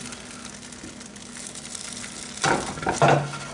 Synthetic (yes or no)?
no